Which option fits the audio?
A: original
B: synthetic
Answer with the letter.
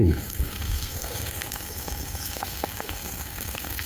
B